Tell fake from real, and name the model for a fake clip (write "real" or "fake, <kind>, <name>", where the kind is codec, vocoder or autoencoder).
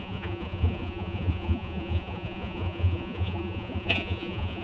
fake, vocoder, Vocos